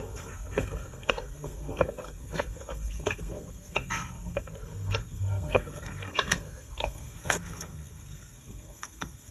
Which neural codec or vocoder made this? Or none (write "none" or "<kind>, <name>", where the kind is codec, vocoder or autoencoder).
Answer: codec, SNAC